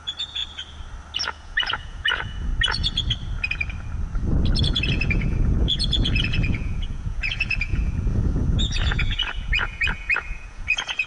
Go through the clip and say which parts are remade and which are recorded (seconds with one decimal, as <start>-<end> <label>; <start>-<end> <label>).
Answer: 0.0-0.4 remade; 0.4-1.2 recorded; 1.2-2.5 remade; 2.5-4.6 recorded; 4.6-11.1 remade